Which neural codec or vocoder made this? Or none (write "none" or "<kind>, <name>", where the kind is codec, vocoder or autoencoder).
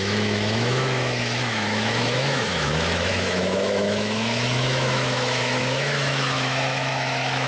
autoencoder, DAC-VAE